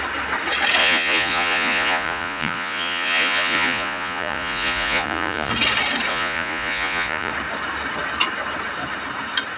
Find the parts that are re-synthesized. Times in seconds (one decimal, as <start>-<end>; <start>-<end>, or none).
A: 0.8-5.5; 6.1-7.3